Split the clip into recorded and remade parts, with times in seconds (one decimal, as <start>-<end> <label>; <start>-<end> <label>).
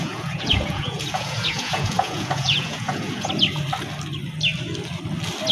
0.0-3.3 remade; 3.3-5.5 recorded